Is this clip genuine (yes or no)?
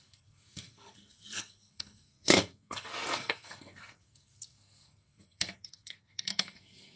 no